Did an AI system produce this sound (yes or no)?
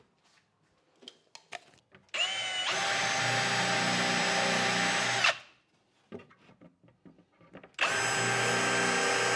no